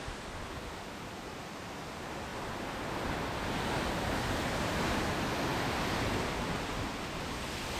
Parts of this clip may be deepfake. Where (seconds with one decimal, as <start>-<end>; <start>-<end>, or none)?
none